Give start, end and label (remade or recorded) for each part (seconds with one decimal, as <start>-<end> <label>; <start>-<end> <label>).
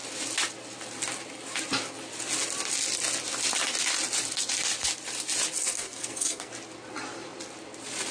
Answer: 0.0-5.6 recorded; 5.6-6.5 remade; 6.5-8.1 recorded